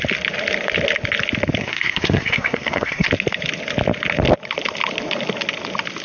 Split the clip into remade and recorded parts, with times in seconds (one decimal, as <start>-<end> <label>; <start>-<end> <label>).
0.0-1.6 recorded; 1.6-3.1 remade; 3.1-6.0 recorded